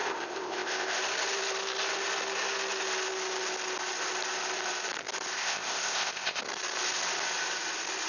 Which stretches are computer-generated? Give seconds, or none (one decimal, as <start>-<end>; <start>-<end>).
0.0-1.0; 5.3-6.4